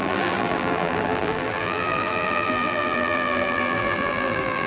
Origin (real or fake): fake